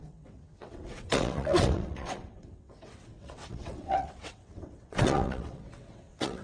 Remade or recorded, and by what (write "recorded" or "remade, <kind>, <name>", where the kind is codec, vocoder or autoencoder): remade, vocoder, WaveNeXt